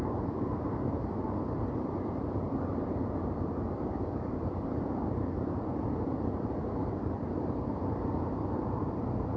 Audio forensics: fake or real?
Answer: fake